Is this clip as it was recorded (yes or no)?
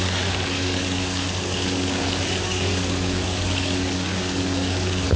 no